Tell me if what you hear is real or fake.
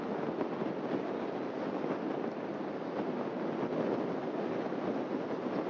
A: real